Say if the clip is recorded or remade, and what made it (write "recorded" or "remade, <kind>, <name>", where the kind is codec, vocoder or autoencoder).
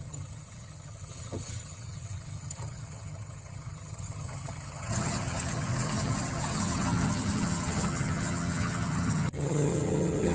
remade, vocoder, HiFi-GAN